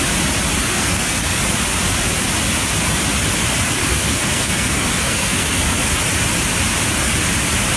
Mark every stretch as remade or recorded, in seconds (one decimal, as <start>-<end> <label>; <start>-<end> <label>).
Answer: 0.0-0.6 recorded; 0.6-1.4 remade; 1.4-3.8 recorded; 3.8-5.9 remade; 5.9-7.8 recorded